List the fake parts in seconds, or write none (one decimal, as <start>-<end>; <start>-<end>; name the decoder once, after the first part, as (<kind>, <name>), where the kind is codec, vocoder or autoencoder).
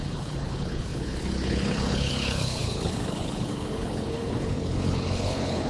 0.0-5.7 (codec, HILCodec)